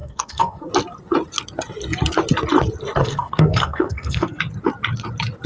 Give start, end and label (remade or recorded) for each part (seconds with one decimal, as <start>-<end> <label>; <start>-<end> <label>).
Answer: 0.0-0.7 remade; 0.7-3.0 recorded; 3.0-4.4 remade; 4.4-5.5 recorded